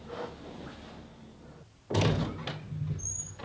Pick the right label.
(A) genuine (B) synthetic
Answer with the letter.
A